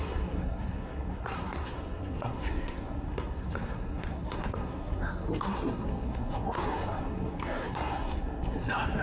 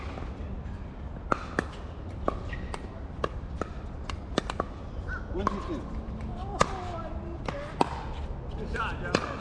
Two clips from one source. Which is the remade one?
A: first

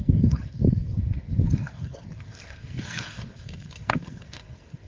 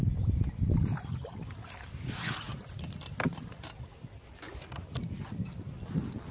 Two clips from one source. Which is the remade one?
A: first